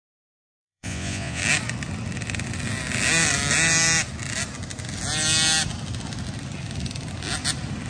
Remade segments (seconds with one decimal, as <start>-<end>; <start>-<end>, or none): 0.0-1.4